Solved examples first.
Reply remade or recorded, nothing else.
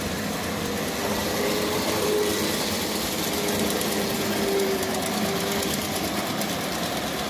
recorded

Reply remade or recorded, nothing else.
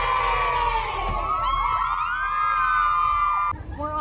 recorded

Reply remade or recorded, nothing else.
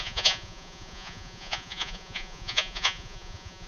remade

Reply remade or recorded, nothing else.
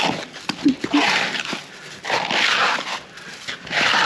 recorded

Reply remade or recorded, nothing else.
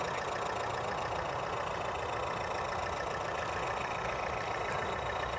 recorded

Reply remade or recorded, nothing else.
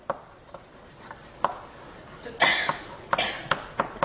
recorded